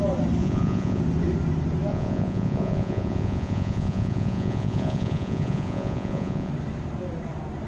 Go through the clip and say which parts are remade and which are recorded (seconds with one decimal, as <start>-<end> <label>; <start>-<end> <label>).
0.0-0.4 recorded; 0.4-1.0 remade; 1.0-1.9 recorded; 1.9-6.5 remade; 6.5-7.7 recorded